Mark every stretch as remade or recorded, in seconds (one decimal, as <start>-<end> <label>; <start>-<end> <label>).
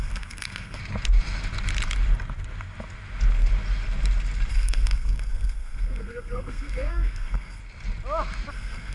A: 0.0-0.8 remade; 0.8-4.5 recorded; 4.5-7.6 remade; 7.6-8.5 recorded; 8.5-8.9 remade